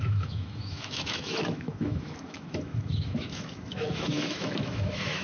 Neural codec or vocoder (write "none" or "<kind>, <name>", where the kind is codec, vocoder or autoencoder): autoencoder, DAC-VAE